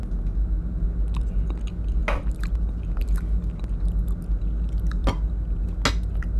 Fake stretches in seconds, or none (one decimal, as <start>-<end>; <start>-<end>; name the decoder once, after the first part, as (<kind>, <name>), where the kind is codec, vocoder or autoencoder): none